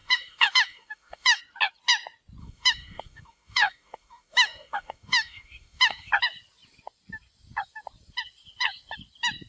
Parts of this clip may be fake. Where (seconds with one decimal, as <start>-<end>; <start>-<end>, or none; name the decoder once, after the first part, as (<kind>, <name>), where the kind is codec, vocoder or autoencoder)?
0.0-1.4 (autoencoder, DAC-VAE); 2.4-6.1